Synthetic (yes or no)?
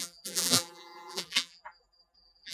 yes